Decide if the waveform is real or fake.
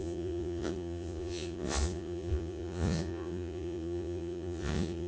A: fake